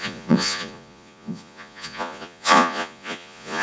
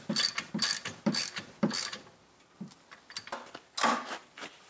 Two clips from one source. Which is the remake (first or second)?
first